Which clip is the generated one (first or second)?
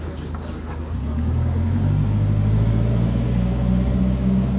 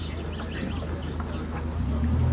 first